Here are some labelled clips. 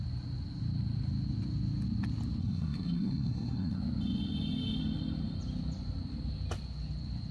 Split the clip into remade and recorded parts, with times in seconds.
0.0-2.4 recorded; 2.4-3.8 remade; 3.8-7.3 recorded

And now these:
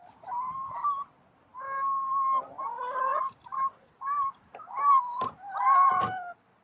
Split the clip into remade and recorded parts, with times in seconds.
0.0-6.6 recorded

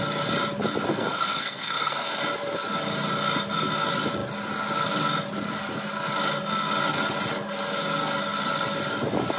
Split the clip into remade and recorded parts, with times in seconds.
0.0-0.9 recorded; 0.9-2.2 remade; 2.2-9.4 recorded